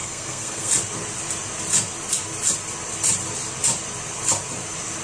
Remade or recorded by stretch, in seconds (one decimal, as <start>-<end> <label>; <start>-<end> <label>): 0.0-0.7 remade; 0.7-5.0 recorded